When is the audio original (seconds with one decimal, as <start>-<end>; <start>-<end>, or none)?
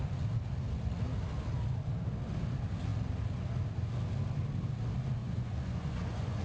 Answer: 0.0-5.2